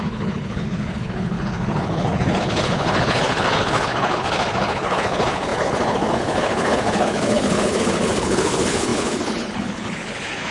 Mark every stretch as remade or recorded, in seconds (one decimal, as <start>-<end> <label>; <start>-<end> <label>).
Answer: 0.0-10.5 remade

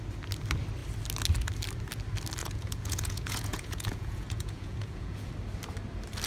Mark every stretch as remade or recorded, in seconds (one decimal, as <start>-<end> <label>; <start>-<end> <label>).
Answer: 0.0-2.4 recorded; 2.4-5.3 remade; 5.3-6.3 recorded

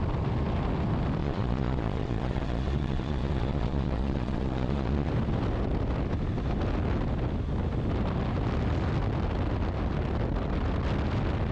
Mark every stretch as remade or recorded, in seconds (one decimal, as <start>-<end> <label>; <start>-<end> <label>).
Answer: 0.0-1.2 recorded; 1.2-5.1 remade; 5.1-11.5 recorded

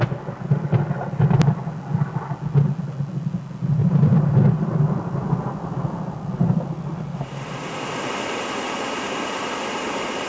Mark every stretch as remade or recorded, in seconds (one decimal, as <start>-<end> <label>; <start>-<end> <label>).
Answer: 0.0-3.8 recorded; 3.8-7.1 remade; 7.1-10.3 recorded

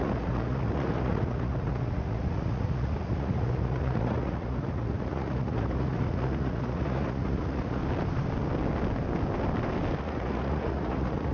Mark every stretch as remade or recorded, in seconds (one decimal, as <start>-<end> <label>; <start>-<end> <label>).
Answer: 0.0-7.8 remade; 7.8-10.0 recorded; 10.0-11.3 remade